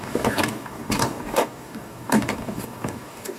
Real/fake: fake